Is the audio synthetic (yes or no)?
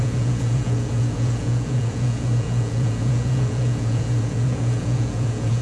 yes